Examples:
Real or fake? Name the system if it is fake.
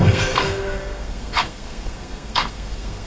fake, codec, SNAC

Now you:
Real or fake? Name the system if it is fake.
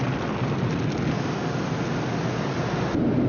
real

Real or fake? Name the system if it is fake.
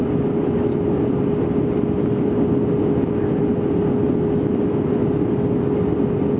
real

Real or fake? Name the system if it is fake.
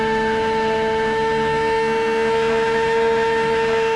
fake, autoencoder, DAC-VAE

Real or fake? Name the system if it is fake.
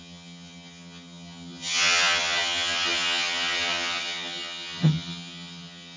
fake, vocoder, HiFi-GAN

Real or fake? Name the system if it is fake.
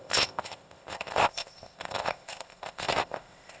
fake, codec, ZipCodec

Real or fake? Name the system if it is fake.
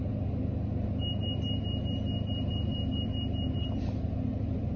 real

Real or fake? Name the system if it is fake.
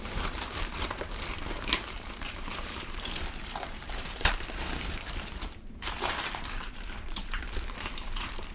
fake, vocoder, BigVGAN v2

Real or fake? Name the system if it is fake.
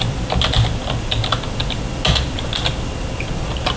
real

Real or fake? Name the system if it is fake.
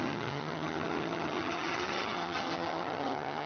fake, vocoder, HiFi-GAN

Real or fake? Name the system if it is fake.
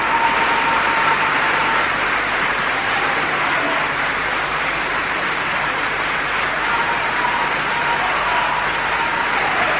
fake, vocoder, BigVGAN v2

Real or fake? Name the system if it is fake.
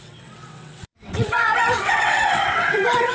fake, vocoder, WaveNeXt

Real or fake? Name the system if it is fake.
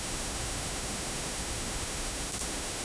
fake, autoencoder, DAC-VAE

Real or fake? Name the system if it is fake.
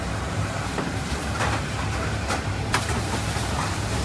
fake, vocoder, BigVGAN v2